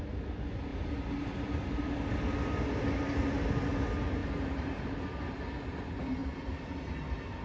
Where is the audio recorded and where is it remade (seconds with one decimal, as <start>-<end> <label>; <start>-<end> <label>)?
0.0-0.7 recorded; 0.7-2.1 remade; 2.1-4.2 recorded; 4.2-4.8 remade; 4.8-7.4 recorded